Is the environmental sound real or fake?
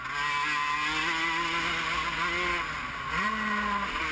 real